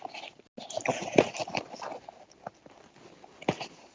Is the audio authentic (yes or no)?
yes